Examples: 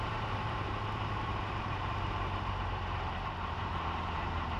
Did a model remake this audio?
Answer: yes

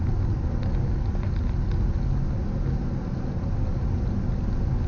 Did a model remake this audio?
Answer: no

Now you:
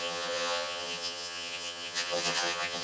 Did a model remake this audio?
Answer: yes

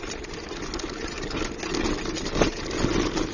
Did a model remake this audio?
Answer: no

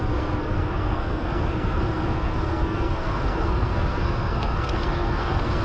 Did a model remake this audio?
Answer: yes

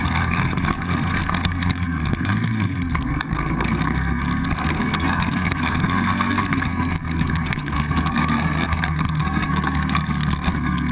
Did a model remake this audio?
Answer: yes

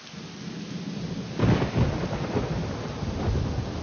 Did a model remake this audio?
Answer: no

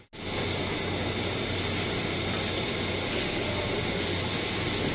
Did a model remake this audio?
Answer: no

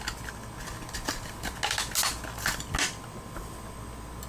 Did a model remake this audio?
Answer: no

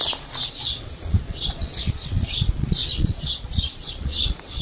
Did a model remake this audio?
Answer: yes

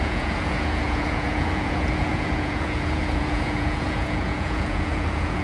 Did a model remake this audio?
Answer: yes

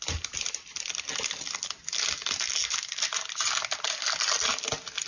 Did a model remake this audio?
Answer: no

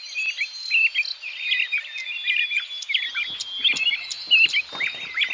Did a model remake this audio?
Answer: no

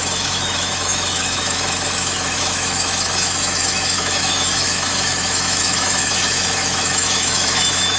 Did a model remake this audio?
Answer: yes